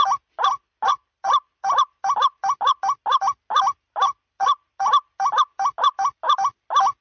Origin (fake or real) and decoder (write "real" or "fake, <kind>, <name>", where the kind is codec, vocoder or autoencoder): real